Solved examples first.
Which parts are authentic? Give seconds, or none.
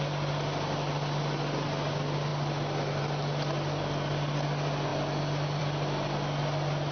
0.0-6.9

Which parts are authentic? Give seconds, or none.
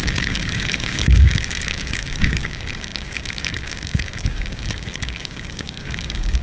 none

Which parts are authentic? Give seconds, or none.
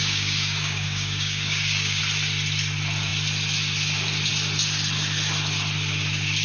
2.0-6.4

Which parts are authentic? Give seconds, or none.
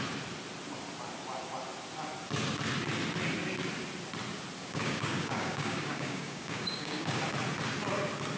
0.0-4.6; 7.2-8.4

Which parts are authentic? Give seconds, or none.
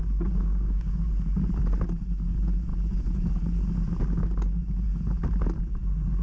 0.0-0.4; 1.0-6.2